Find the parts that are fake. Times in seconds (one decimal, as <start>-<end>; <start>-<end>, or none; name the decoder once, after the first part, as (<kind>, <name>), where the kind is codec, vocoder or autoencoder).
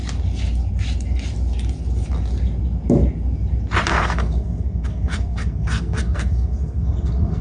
3.9-7.4 (codec, SNAC)